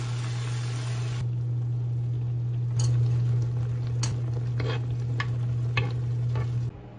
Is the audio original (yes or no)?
yes